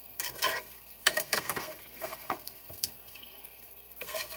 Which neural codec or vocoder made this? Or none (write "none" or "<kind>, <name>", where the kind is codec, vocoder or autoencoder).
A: codec, SNAC